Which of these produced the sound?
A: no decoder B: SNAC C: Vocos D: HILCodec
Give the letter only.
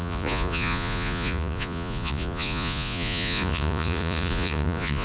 C